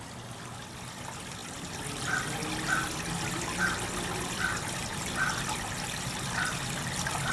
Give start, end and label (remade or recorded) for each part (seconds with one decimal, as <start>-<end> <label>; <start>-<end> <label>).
0.0-7.3 recorded